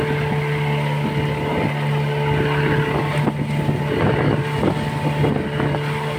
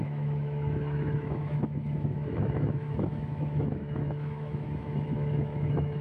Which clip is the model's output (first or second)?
second